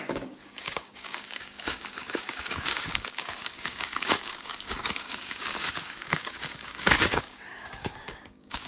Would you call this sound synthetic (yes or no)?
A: yes